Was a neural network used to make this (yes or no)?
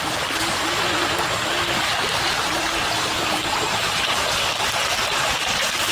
yes